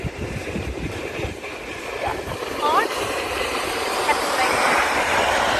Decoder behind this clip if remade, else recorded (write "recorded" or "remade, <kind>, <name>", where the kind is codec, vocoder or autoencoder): remade, vocoder, BigVGAN v2